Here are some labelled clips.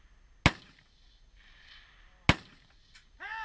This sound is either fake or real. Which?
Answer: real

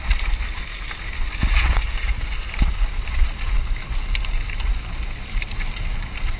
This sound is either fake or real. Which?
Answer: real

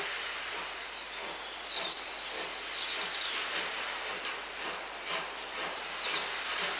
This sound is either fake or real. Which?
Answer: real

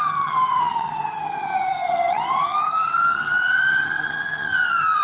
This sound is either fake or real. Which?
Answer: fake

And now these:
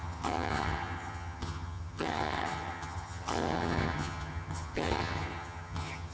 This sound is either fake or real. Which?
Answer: fake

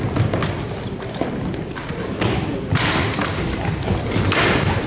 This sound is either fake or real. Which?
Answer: real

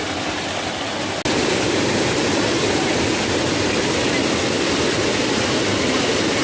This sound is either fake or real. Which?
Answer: real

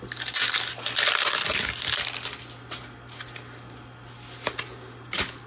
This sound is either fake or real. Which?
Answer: real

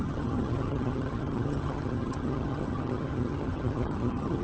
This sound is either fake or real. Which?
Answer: fake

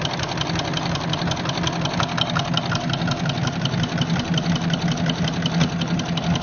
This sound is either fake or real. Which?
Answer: real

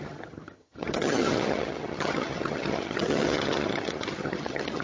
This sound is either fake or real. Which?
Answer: fake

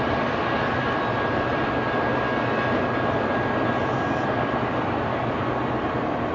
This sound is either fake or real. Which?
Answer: real